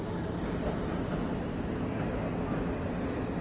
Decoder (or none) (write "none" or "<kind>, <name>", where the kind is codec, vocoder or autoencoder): none